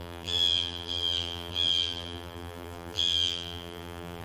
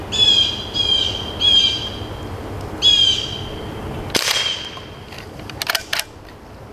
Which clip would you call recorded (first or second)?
second